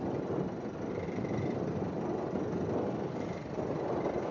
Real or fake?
real